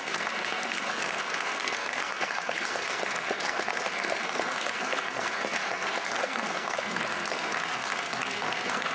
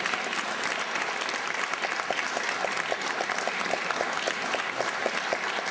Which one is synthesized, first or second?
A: first